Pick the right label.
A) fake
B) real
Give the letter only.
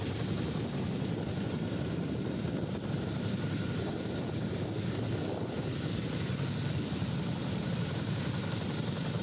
A